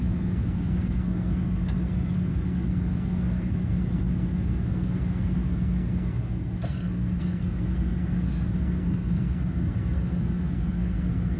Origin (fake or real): fake